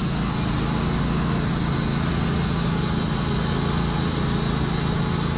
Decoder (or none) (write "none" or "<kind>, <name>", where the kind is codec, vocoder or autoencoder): none